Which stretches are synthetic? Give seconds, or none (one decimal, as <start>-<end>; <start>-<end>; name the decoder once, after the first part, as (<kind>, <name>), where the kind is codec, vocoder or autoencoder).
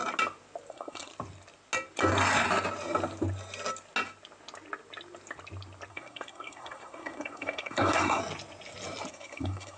0.7-1.1 (codec, SNAC); 5.9-8.2; 9.1-9.8